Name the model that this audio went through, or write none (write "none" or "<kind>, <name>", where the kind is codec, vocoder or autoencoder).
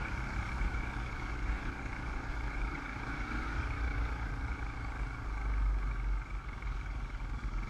codec, DAC